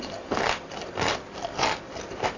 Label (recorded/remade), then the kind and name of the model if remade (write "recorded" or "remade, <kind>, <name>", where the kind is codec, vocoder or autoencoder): recorded